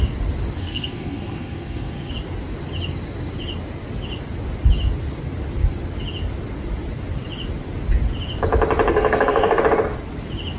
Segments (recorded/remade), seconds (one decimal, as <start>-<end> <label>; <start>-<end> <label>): 0.0-0.6 recorded; 0.6-2.1 remade; 2.1-8.9 recorded; 8.9-9.6 remade; 9.6-10.6 recorded